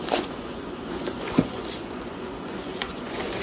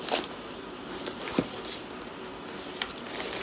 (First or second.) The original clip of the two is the second